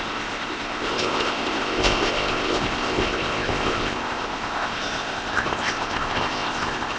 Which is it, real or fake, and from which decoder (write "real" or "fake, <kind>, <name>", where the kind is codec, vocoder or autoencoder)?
fake, codec, ZipCodec